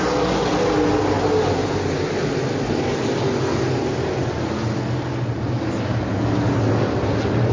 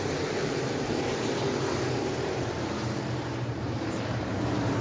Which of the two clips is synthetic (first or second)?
second